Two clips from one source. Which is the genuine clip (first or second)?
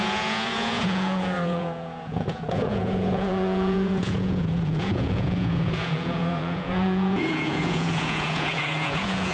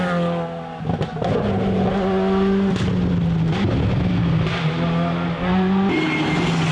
second